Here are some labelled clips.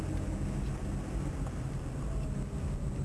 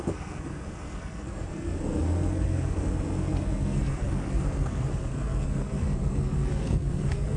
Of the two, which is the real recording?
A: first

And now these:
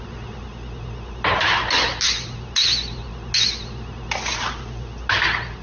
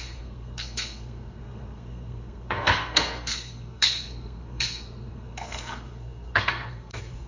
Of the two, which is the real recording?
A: first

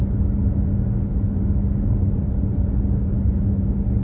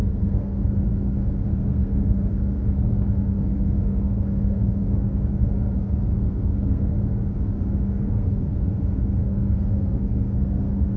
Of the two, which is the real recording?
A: first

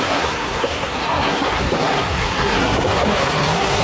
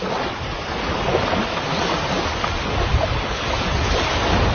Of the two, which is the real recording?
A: second